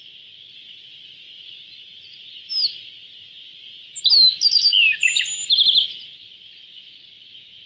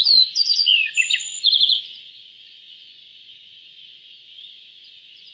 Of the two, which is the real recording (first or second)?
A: first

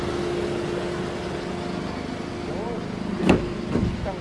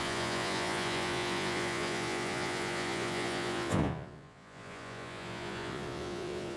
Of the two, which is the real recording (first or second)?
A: first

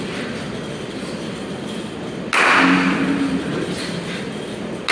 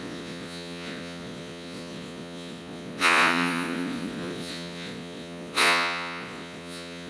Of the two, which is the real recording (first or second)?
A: first